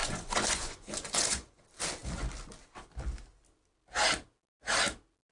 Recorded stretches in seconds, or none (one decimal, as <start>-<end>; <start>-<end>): 1.6-5.3